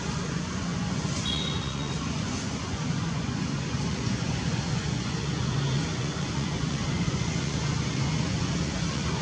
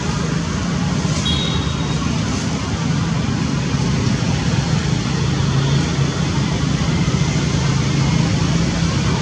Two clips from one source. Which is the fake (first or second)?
first